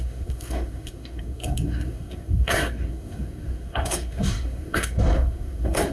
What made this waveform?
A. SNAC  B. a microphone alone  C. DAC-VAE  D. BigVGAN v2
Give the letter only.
A